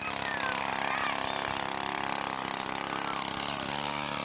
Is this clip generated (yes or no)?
no